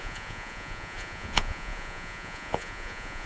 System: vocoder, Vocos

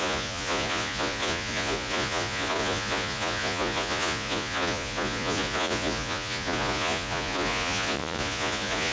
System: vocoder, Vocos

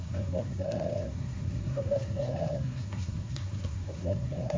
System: codec, SNAC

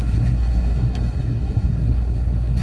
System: codec, SNAC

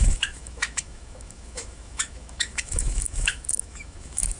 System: autoencoder, DAC-VAE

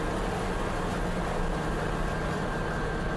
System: none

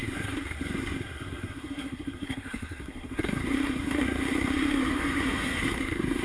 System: codec, SNAC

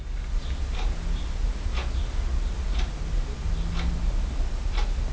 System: none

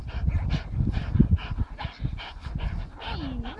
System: none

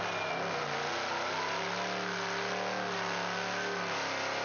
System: none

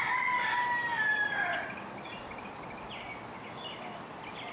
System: none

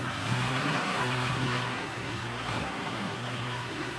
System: codec, SNAC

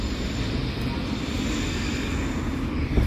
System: none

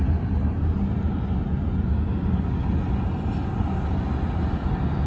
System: none